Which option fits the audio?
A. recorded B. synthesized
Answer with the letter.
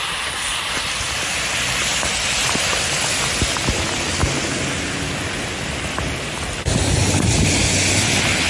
A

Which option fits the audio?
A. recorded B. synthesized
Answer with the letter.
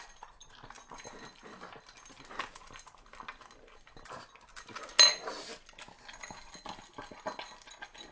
A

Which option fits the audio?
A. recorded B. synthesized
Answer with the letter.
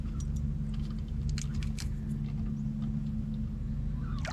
A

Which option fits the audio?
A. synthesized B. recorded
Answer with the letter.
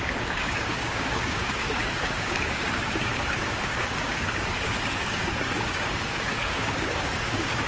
A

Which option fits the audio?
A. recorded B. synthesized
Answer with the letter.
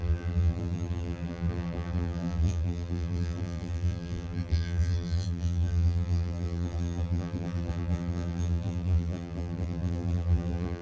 B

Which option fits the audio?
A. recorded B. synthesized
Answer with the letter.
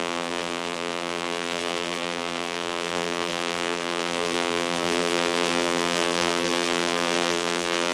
B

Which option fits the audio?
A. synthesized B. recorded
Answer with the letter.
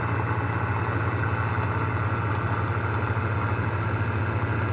B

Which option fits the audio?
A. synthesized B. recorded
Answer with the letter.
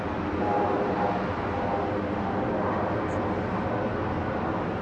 B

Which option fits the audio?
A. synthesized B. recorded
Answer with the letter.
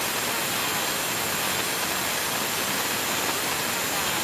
B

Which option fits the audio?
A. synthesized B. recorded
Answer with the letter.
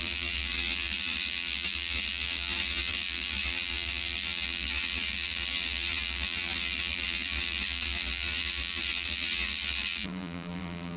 A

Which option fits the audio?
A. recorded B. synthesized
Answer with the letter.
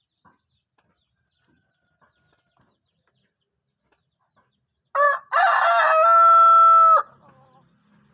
A